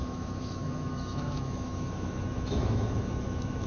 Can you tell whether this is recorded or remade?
remade